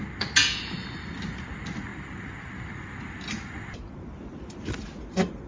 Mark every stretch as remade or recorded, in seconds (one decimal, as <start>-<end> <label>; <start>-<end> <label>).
0.0-5.5 recorded